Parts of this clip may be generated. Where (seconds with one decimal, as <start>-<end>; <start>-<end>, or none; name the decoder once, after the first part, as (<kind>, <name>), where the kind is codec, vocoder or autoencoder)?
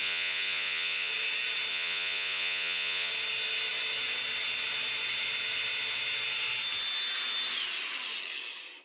0.0-1.1 (vocoder, Vocos); 1.7-3.1